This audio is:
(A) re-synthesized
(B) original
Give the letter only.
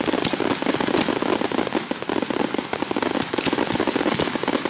B